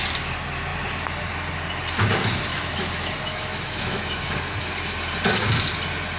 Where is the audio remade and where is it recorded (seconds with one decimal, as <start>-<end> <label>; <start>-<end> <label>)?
0.0-2.5 recorded; 2.5-4.3 remade; 4.3-6.2 recorded